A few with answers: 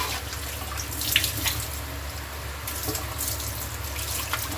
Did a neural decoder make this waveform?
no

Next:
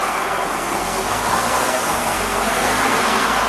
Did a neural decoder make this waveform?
yes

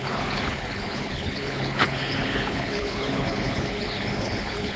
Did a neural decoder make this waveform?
yes